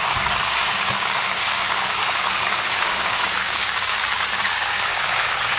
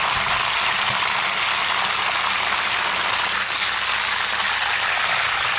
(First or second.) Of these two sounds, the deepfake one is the first